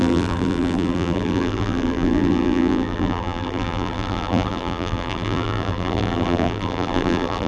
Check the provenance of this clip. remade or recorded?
remade